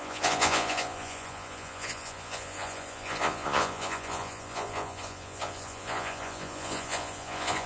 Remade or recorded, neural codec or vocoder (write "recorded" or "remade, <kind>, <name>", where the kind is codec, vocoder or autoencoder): remade, vocoder, Vocos